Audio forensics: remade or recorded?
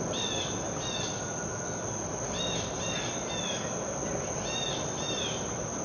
recorded